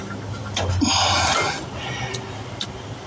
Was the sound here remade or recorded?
recorded